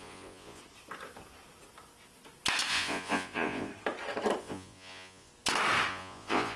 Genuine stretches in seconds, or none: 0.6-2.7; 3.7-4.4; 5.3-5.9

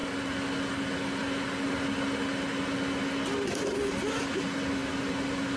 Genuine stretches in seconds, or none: 0.0-5.6

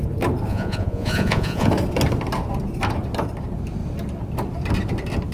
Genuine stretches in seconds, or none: 0.0-0.5; 1.7-5.3